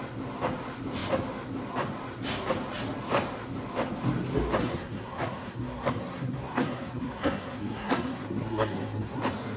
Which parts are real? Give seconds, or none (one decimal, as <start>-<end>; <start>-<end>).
0.0-4.6; 9.2-9.6